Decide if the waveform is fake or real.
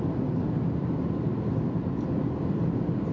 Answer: real